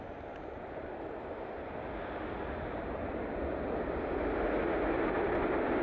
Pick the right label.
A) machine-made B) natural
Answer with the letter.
B